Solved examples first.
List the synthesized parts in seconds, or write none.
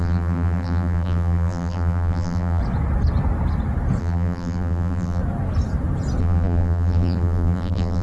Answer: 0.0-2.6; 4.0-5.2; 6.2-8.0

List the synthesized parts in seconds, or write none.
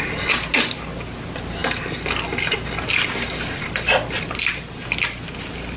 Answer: none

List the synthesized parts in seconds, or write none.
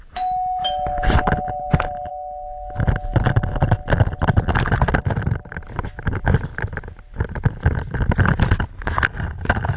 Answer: 0.6-2.1